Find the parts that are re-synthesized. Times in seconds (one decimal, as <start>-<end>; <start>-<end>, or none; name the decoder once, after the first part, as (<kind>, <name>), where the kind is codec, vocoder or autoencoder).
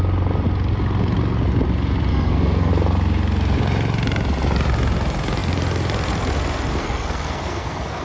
2.1-2.7 (codec, SNAC); 6.8-8.0